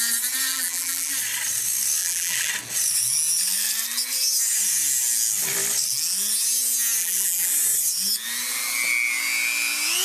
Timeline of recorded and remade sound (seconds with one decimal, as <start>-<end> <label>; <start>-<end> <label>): 0.0-0.5 recorded; 0.5-1.1 remade; 1.1-2.0 recorded; 2.0-2.5 remade; 2.5-7.0 recorded; 7.0-7.5 remade; 7.5-10.0 recorded